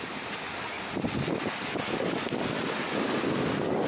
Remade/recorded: recorded